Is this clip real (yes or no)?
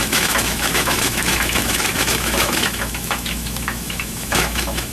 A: no